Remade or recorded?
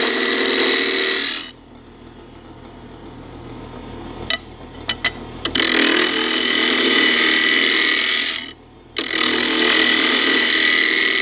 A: recorded